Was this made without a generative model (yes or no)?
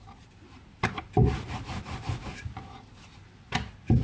yes